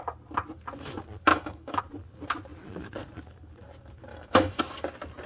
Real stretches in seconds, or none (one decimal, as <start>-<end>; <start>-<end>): 0.0-1.3; 1.8-4.1; 4.6-5.3